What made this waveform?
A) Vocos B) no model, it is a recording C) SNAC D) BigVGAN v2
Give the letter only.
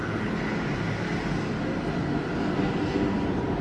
B